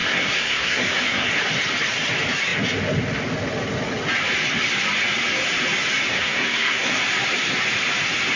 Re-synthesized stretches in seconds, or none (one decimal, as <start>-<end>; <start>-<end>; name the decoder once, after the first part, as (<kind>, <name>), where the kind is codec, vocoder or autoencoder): 0.0-1.4 (codec, SNAC); 6.1-7.0